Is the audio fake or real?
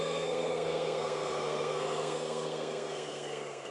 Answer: fake